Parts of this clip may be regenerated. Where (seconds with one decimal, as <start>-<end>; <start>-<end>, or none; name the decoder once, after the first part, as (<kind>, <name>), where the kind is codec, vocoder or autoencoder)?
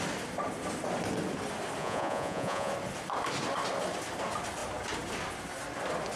1.8-2.7 (vocoder, Vocos)